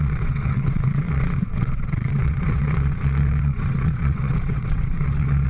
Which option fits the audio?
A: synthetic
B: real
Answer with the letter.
A